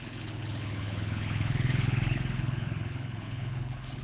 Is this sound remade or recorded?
remade